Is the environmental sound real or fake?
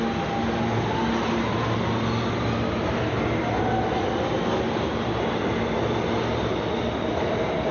real